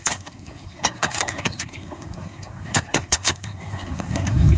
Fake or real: fake